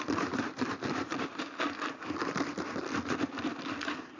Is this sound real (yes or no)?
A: yes